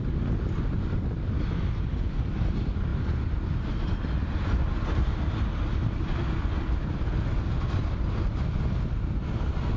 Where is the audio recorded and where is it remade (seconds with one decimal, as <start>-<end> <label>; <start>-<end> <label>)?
0.0-9.8 recorded